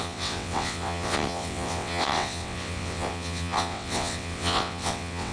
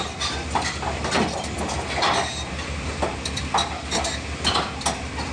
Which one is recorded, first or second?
second